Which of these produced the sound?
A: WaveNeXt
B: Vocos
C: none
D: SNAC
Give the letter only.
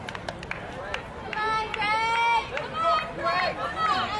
C